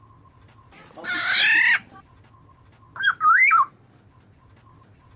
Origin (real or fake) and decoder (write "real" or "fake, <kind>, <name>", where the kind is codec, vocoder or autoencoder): real